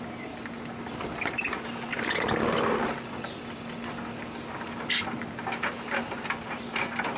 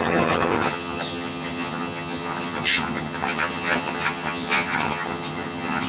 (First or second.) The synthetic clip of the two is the second